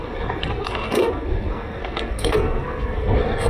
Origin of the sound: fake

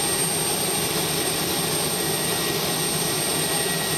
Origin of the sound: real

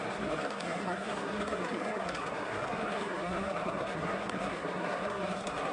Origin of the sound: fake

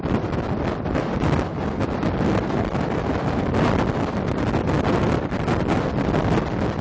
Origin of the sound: real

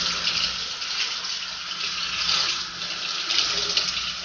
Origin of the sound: real